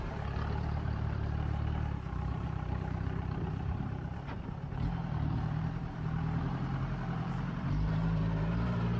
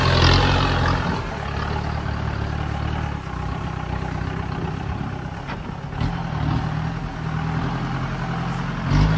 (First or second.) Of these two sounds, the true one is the second